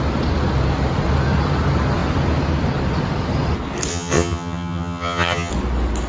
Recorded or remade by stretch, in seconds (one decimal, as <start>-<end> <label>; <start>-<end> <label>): 0.0-3.9 recorded; 3.9-5.5 remade; 5.5-6.1 recorded